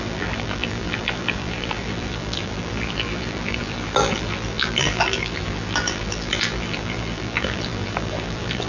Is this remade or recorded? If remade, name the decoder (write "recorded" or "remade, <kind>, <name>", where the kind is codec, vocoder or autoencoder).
remade, vocoder, BigVGAN v2